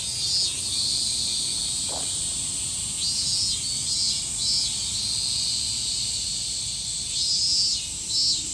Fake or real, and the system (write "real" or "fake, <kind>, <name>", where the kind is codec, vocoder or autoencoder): real